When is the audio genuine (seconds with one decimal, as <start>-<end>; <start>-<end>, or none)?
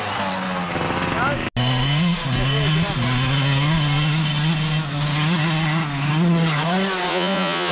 0.0-7.1